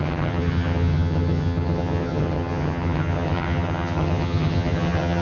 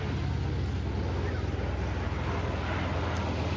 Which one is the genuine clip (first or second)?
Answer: second